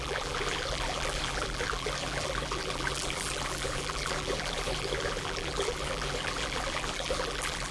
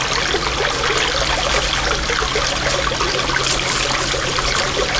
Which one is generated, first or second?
first